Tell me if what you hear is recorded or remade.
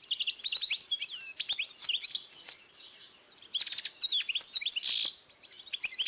recorded